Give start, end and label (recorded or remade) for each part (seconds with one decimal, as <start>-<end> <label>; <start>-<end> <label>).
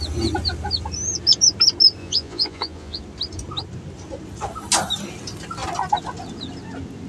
0.0-2.0 recorded; 2.0-3.0 remade; 3.0-7.1 recorded